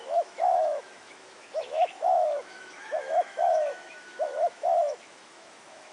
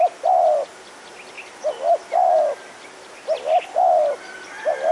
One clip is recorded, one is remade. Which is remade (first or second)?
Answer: first